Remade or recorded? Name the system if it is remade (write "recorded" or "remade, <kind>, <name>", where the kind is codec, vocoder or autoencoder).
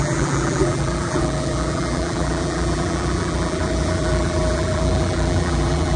remade, vocoder, BigVGAN v2